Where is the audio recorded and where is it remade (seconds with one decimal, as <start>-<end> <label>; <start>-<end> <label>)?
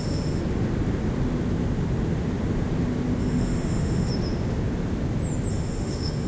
0.0-0.4 remade; 0.4-3.2 recorded; 3.2-4.1 remade; 4.1-5.5 recorded; 5.5-6.3 remade